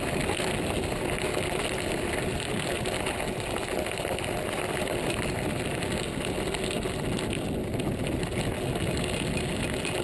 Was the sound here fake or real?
real